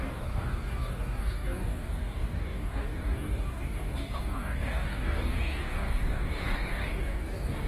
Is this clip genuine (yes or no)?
no